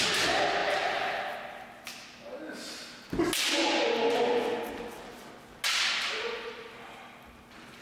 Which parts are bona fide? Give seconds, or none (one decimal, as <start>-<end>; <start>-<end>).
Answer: 0.0-7.8